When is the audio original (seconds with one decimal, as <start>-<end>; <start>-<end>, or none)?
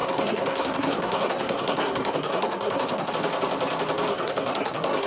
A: 3.1-4.1